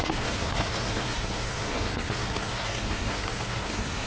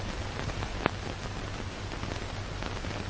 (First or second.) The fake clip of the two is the first